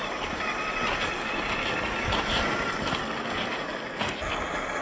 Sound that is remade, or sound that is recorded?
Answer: recorded